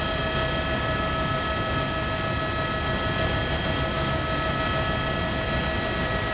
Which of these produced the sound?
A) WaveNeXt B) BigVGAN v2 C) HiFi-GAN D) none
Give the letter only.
D